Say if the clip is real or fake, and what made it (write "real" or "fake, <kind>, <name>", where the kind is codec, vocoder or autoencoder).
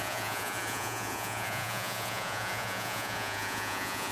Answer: fake, vocoder, Vocos